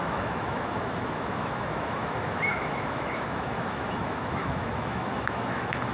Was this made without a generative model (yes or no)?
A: no